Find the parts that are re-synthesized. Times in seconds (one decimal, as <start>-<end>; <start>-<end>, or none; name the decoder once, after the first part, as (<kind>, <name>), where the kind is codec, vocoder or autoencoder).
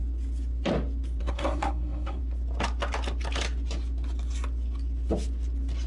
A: 1.2-2.2 (codec, SNAC)